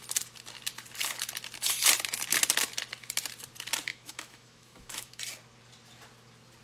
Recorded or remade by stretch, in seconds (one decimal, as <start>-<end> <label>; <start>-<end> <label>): 0.0-3.9 recorded; 3.9-5.2 remade; 5.2-6.6 recorded